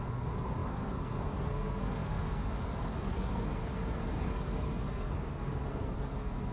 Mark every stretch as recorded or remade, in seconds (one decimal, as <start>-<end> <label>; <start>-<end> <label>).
0.0-6.5 remade